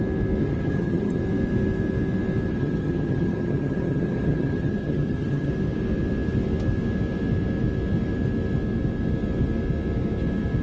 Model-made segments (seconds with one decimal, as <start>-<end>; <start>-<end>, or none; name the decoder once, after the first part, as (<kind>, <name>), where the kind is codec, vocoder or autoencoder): 0.4-1.2 (vocoder, HiFi-GAN); 2.5-5.5